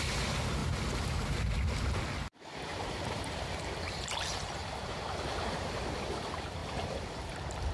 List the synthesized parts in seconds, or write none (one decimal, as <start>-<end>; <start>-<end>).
2.7-5.0; 6.6-7.3